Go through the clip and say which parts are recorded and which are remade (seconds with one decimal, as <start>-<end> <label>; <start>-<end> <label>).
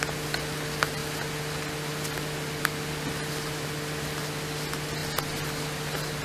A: 0.0-6.2 recorded